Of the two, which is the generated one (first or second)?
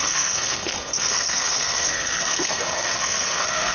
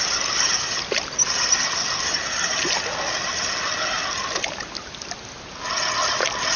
first